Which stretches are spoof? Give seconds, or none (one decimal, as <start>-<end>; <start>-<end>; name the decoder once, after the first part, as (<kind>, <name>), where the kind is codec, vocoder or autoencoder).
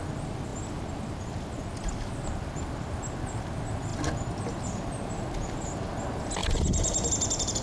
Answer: 3.9-4.6 (vocoder, BigVGAN v2); 6.4-7.1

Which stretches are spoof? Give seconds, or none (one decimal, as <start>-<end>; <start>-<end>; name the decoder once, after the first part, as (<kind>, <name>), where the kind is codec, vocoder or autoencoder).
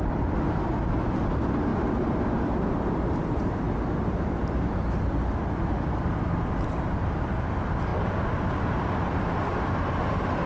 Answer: 1.7-5.0 (vocoder, BigVGAN v2)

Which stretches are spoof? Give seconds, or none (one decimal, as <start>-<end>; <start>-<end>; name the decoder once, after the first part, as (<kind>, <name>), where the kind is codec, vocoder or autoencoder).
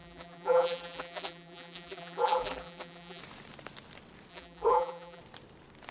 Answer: 0.0-3.2 (vocoder, BigVGAN v2); 4.3-5.2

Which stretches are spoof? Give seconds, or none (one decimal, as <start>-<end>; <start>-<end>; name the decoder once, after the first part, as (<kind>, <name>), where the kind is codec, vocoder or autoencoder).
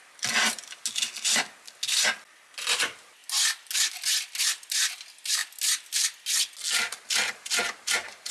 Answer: none